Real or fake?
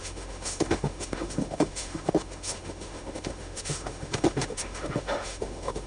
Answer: fake